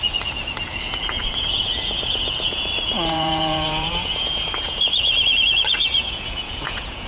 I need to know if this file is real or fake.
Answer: fake